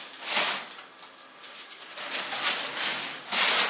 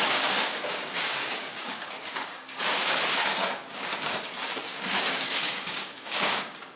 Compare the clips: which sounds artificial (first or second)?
second